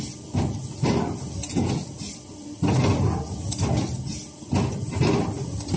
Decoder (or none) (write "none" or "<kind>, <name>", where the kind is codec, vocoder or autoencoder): none